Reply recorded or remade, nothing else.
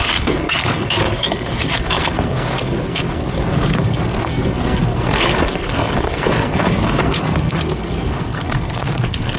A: remade